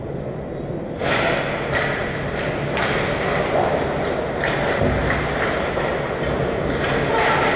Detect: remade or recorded recorded